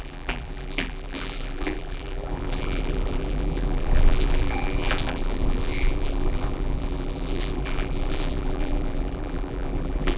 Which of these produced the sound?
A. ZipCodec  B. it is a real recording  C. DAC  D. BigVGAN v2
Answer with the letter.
D